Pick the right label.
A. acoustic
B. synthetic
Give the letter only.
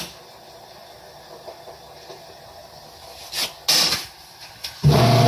A